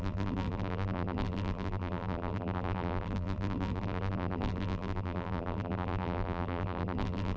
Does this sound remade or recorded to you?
remade